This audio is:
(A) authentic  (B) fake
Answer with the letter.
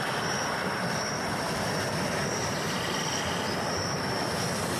A